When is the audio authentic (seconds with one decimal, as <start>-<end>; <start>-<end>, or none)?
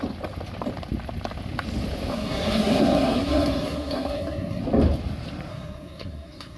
0.0-2.1; 4.6-5.5